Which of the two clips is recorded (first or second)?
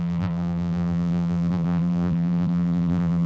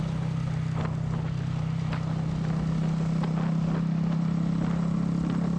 second